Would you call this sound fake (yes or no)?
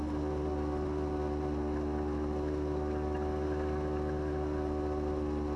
no